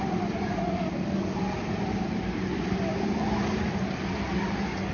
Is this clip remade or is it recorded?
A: recorded